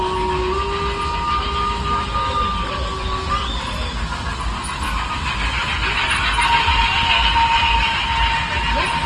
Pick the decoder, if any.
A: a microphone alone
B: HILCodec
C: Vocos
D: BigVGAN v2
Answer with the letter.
A